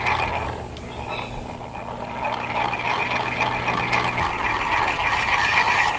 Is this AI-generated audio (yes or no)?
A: no